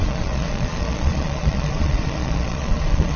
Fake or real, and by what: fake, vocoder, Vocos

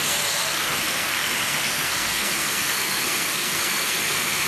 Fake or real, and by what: fake, codec, SNAC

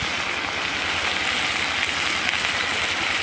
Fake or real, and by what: real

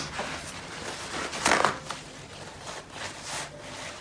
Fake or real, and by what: real